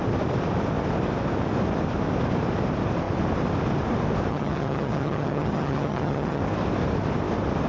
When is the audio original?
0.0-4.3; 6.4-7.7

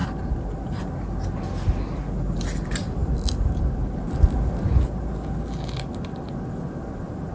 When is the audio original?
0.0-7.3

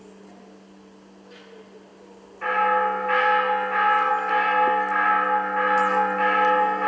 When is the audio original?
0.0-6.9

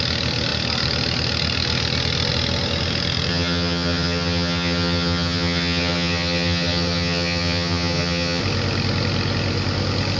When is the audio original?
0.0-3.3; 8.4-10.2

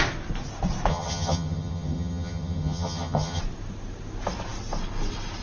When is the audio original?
0.0-0.9; 3.4-5.4